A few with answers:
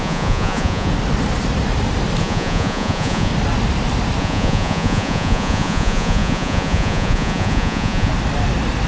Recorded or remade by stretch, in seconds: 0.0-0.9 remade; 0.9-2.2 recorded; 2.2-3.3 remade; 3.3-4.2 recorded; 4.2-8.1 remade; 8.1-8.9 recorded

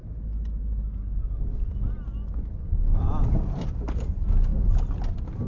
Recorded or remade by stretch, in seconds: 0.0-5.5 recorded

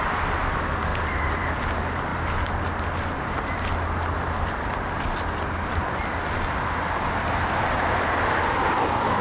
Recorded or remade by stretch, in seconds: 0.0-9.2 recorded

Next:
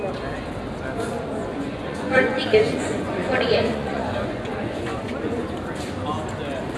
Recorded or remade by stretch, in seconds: 0.0-1.4 recorded; 1.4-5.5 remade; 5.5-6.8 recorded

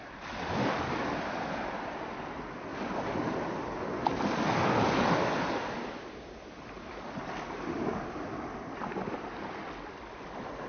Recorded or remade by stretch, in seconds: 0.0-10.7 recorded